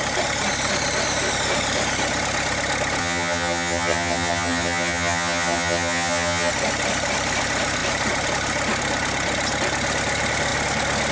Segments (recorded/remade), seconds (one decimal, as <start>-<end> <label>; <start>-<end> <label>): 0.0-3.0 recorded; 3.0-6.5 remade; 6.5-11.1 recorded